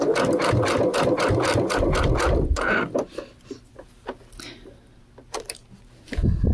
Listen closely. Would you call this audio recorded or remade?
recorded